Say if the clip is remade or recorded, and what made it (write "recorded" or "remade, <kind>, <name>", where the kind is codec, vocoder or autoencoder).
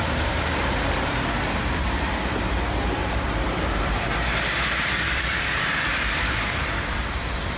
remade, vocoder, BigVGAN v2